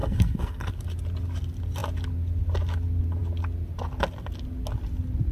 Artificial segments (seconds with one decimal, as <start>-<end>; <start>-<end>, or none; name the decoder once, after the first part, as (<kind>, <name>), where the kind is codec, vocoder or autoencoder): 0.0-0.7 (codec, SNAC)